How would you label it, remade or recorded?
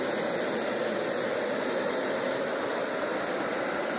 remade